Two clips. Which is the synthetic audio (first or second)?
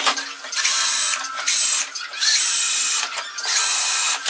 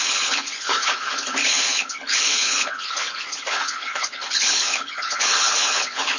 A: second